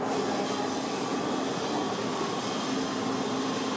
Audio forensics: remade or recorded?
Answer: recorded